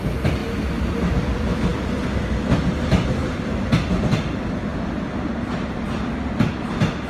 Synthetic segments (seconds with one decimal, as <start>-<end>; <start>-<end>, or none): 3.2-4.0